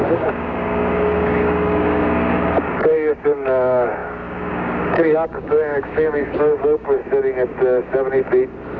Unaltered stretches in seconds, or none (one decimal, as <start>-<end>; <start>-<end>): 7.0-8.8